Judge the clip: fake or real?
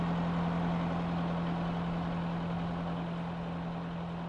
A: real